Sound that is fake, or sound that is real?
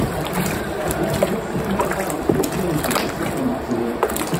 fake